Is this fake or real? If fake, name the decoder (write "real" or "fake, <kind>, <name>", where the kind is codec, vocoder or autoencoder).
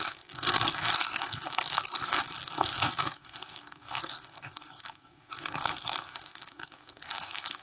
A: fake, codec, SNAC